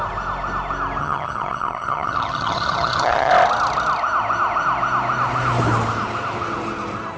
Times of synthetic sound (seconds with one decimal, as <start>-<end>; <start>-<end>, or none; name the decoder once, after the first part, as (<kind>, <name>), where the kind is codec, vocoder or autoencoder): 1.0-3.3 (vocoder, HiFi-GAN)